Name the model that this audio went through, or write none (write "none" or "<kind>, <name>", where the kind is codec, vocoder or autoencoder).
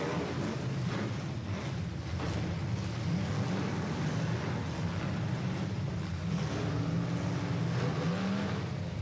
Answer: none